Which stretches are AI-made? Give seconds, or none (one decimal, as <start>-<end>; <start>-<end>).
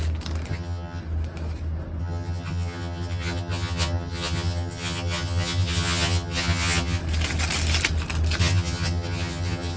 0.5-1.0; 2.0-7.0; 8.4-9.8